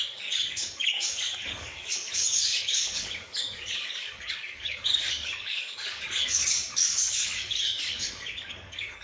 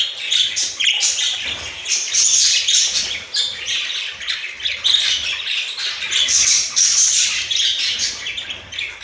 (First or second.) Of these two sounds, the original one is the second